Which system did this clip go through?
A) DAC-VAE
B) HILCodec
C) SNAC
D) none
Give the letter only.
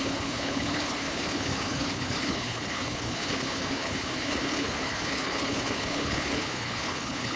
B